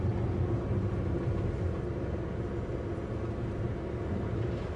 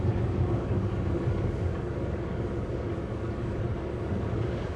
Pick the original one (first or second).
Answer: first